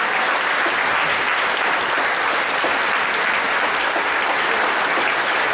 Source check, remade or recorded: recorded